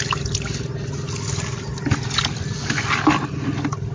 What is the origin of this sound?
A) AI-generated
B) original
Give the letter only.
B